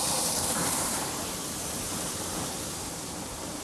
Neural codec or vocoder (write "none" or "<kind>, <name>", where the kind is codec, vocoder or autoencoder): vocoder, BigVGAN v2